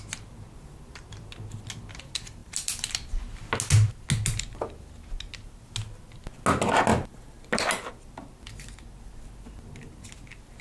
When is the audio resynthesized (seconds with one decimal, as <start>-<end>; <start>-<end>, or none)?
2.4-3.2; 6.9-7.7